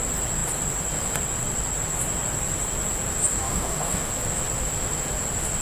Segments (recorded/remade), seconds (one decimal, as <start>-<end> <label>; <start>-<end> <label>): 0.0-3.3 recorded; 3.3-4.1 remade; 4.1-5.6 recorded